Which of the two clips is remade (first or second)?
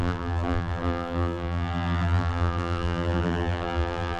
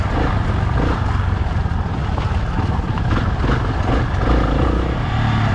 first